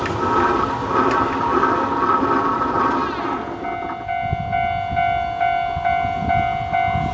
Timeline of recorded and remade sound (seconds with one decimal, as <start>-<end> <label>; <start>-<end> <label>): 0.0-7.1 recorded